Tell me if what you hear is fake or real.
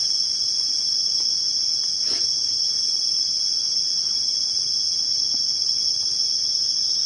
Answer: real